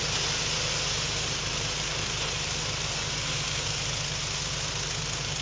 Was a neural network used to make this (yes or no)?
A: no